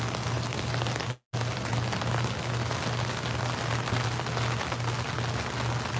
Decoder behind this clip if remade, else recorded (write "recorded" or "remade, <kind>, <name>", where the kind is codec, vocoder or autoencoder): recorded